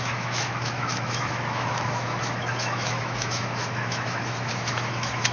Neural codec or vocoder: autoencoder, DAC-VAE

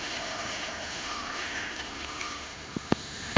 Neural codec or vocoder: autoencoder, DAC-VAE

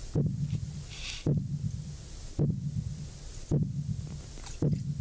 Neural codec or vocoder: none